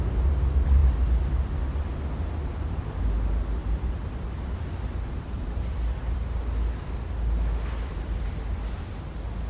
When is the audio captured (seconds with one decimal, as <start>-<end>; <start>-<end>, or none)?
0.0-3.6; 6.4-9.5